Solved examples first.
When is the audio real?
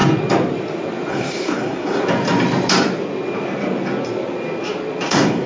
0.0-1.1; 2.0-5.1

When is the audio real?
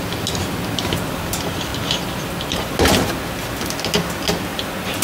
0.0-5.0